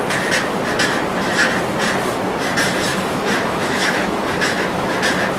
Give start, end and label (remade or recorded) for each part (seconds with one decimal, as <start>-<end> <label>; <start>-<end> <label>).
0.0-2.9 recorded; 2.9-5.0 remade; 5.0-5.4 recorded